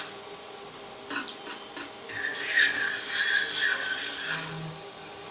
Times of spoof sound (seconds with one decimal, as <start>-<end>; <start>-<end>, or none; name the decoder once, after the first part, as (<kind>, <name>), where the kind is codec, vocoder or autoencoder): 2.3-3.0 (codec, DAC); 4.0-5.3